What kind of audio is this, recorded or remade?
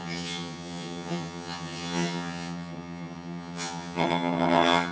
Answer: remade